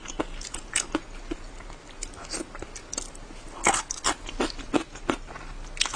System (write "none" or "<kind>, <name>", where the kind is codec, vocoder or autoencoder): none